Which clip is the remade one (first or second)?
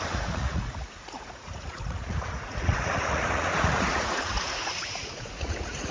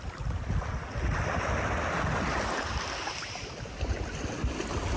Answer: first